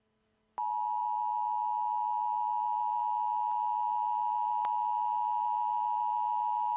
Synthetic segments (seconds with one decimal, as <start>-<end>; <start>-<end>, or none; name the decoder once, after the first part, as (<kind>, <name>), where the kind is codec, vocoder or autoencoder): none